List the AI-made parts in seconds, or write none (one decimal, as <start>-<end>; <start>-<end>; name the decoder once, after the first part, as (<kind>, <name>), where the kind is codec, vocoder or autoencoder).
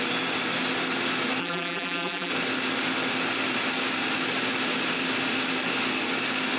1.4-2.3 (vocoder, BigVGAN v2)